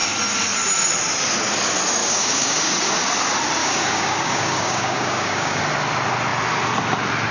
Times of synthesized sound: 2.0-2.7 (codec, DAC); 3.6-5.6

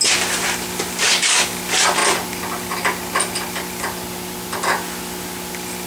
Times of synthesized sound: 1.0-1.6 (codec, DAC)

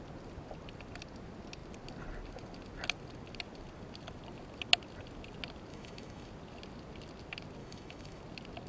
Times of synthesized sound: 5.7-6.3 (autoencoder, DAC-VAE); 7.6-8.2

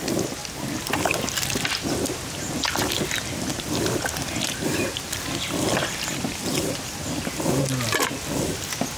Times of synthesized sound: none

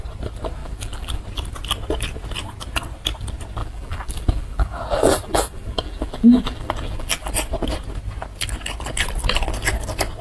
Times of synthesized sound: 0.6-1.2 (vocoder, BigVGAN v2); 3.6-7.3